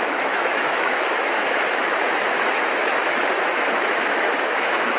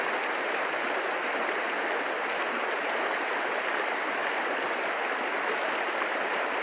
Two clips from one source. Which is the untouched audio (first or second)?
second